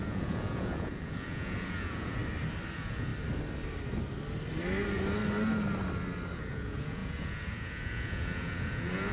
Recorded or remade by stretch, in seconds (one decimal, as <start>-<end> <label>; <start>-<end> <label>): 0.0-2.2 remade; 2.2-2.7 recorded; 2.7-3.1 remade; 3.1-6.4 recorded; 6.4-9.1 remade